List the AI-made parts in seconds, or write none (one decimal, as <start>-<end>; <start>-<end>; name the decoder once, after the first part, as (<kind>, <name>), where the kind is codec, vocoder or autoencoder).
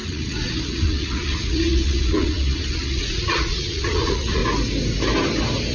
0.0-4.4 (vocoder, Vocos)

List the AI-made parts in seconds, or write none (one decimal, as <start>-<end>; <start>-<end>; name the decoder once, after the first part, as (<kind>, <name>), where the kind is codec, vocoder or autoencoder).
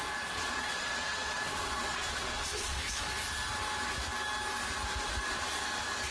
0.0-2.9 (vocoder, Vocos)